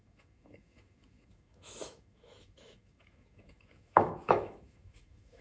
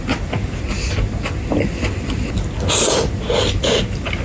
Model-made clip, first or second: first